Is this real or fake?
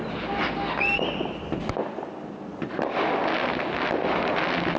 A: real